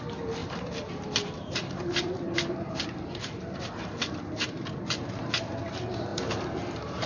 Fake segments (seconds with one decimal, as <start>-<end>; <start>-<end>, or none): 0.4-4.6; 6.1-7.1